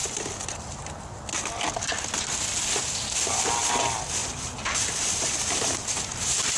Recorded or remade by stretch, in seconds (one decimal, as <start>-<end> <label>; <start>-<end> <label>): 0.0-0.8 remade; 0.8-6.6 recorded